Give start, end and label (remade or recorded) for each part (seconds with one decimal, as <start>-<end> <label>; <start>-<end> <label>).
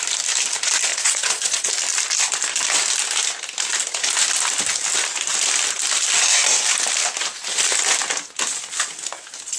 0.0-0.9 recorded; 0.9-1.7 remade; 1.7-9.6 recorded